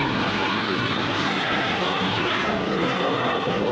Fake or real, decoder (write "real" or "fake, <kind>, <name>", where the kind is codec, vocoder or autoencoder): fake, codec, SNAC